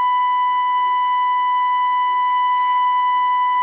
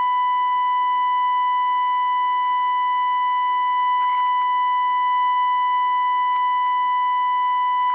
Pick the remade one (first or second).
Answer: first